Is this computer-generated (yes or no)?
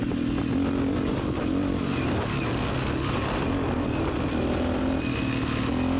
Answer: no